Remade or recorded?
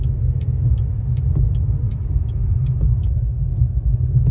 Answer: recorded